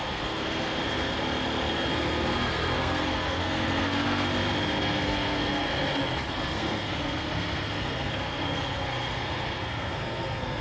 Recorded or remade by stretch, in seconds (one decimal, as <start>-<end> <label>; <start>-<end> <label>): 0.0-1.1 remade; 1.1-1.7 recorded; 1.7-4.3 remade; 4.3-4.8 recorded; 4.8-5.7 remade; 5.7-6.3 recorded; 6.3-10.6 remade